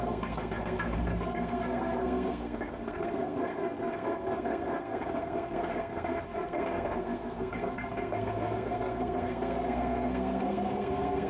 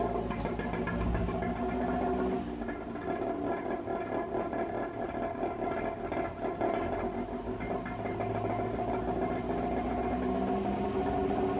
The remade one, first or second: first